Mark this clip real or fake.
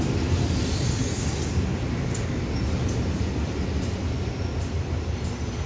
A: real